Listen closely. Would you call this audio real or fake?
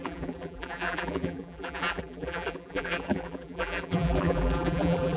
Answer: fake